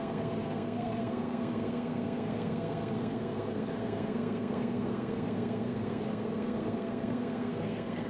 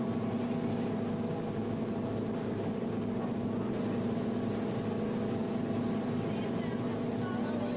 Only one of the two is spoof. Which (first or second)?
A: first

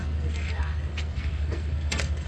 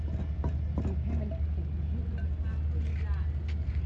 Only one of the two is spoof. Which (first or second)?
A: first